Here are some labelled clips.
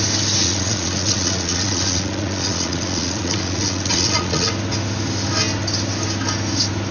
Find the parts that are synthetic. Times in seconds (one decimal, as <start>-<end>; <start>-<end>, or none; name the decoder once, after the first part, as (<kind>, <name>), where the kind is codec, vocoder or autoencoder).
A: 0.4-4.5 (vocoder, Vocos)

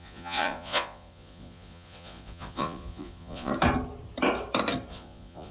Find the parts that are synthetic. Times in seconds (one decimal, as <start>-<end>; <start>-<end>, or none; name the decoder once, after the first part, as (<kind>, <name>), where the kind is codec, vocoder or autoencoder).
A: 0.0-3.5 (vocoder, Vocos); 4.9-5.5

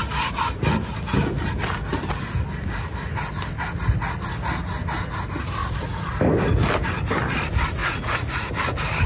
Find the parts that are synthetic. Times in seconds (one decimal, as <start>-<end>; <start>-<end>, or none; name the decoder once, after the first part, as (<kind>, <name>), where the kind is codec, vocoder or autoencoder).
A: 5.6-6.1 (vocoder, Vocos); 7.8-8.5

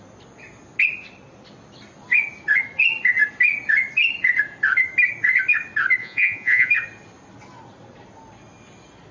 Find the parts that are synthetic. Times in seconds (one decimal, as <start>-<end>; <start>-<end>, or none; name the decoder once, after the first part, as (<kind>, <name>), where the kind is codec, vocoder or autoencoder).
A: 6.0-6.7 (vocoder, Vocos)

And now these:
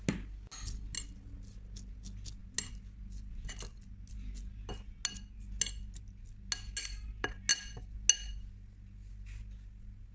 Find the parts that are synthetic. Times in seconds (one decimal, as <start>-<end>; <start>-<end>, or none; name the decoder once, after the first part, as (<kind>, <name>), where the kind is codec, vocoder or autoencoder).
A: none